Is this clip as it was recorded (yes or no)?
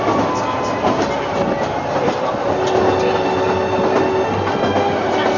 yes